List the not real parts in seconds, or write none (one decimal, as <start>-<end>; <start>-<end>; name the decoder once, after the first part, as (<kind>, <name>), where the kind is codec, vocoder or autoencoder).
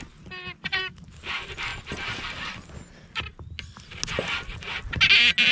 none